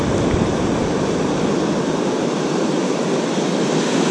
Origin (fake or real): real